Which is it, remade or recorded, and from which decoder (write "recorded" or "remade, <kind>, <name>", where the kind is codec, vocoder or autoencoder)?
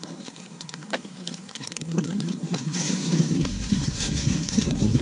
remade, codec, SNAC